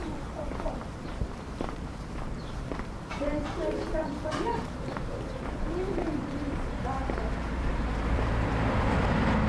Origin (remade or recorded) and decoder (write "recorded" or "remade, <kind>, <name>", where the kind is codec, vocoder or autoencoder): remade, vocoder, BigVGAN v2